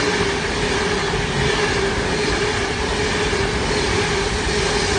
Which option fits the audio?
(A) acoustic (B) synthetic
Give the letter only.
A